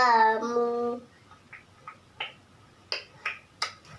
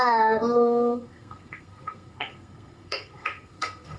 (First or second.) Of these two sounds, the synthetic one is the second